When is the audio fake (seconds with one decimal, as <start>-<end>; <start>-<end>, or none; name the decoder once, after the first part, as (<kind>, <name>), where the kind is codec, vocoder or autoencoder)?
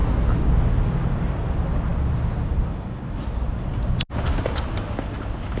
none